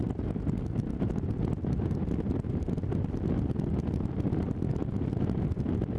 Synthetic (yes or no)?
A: no